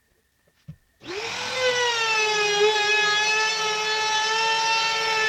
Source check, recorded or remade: recorded